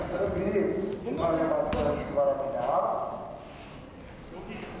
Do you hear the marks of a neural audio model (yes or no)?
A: no